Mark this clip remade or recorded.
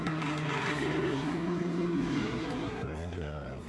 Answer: remade